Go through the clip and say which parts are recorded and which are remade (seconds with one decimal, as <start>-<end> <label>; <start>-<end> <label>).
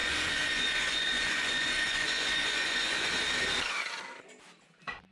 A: 0.0-3.1 remade; 3.1-5.1 recorded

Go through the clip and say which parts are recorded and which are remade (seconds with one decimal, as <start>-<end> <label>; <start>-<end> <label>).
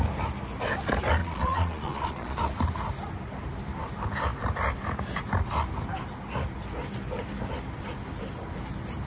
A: 0.0-1.2 recorded; 1.2-2.4 remade; 2.4-9.1 recorded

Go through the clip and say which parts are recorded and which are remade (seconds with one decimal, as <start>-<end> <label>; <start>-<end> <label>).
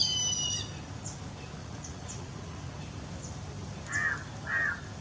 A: 0.0-1.6 recorded; 1.6-2.7 remade; 2.7-5.0 recorded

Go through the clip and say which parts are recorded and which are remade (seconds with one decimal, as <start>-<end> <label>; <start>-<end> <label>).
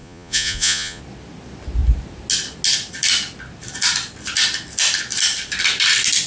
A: 0.0-1.0 remade; 1.0-6.3 recorded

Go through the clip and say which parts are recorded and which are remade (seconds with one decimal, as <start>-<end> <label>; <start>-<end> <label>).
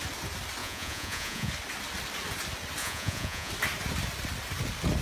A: 0.0-0.6 recorded; 0.6-1.5 remade; 1.5-2.8 recorded; 2.8-3.5 remade; 3.5-5.0 recorded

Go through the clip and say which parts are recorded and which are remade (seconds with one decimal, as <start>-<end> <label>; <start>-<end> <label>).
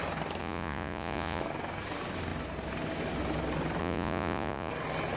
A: 0.0-0.4 recorded; 0.4-1.4 remade; 1.4-3.8 recorded; 3.8-4.7 remade; 4.7-5.2 recorded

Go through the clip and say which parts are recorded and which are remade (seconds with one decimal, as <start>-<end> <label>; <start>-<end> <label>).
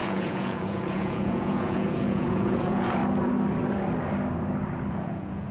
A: 0.0-3.0 remade; 3.0-4.9 recorded; 4.9-5.5 remade